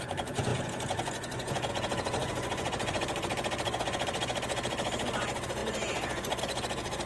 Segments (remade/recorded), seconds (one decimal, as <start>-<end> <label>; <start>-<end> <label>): 0.0-7.1 remade